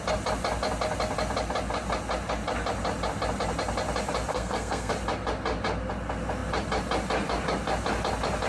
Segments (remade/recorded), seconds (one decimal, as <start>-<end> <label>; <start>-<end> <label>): 0.0-4.3 recorded; 4.3-4.9 remade; 4.9-8.5 recorded